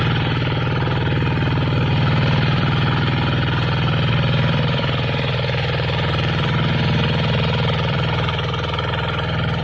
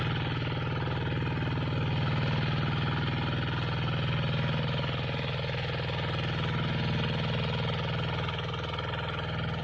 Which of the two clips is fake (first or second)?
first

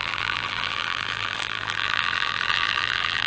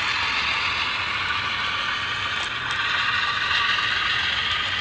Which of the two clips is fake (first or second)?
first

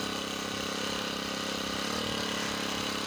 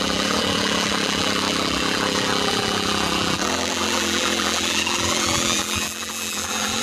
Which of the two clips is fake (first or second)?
second